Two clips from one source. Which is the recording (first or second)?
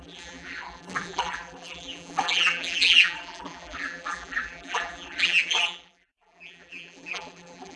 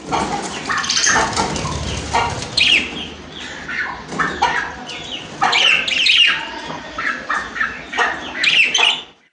second